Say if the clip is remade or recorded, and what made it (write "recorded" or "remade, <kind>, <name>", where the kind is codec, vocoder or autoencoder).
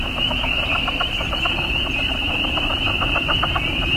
remade, vocoder, BigVGAN v2